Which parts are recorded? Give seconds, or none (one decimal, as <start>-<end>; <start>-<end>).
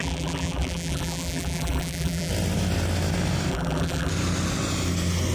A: 2.3-3.5; 4.1-5.3